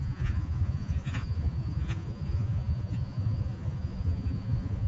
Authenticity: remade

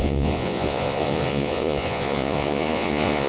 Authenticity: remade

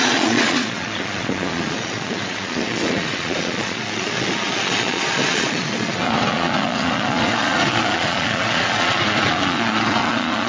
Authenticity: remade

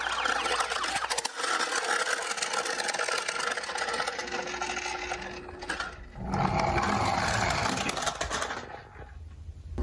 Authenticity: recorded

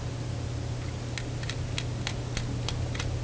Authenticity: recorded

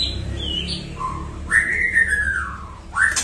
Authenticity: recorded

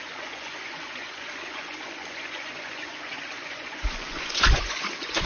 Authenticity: remade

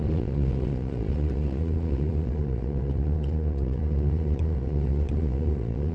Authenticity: remade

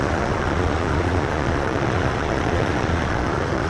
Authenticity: remade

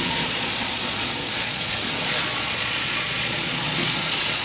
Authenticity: remade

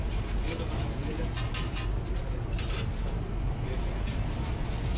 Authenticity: recorded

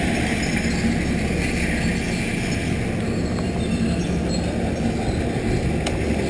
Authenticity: recorded